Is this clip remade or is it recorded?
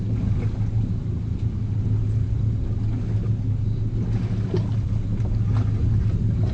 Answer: recorded